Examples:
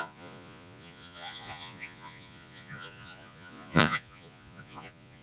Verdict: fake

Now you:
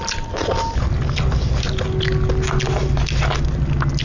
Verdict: real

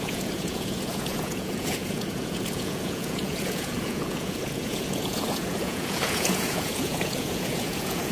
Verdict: fake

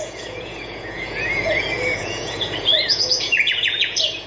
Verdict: fake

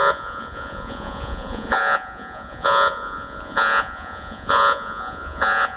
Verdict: fake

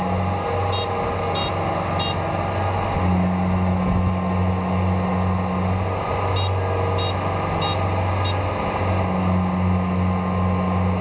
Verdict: real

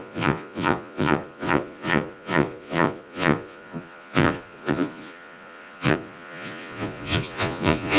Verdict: fake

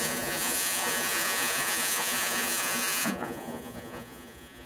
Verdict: fake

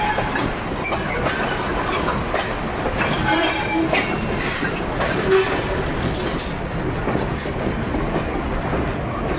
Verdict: real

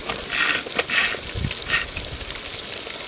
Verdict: real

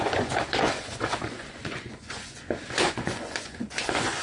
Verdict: fake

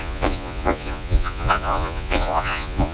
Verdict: fake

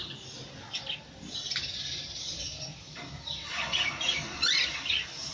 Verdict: real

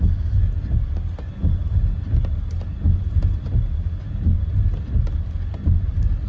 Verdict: real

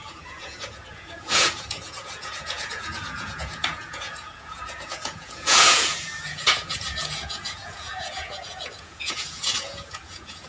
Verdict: fake